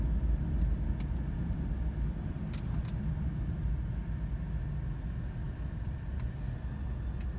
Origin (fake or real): real